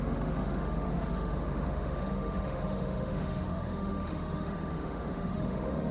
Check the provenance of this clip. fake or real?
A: fake